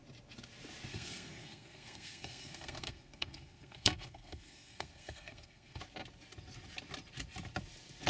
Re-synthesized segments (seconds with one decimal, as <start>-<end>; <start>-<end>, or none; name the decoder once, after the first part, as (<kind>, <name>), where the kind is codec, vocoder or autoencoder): 0.9-5.8 (codec, SNAC)